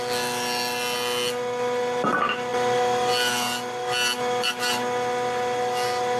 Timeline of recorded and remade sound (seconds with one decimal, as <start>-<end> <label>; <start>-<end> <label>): 0.0-6.2 recorded